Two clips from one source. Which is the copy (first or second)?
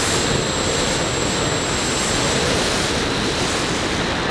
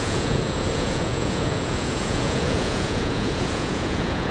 second